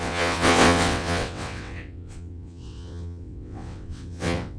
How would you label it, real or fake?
fake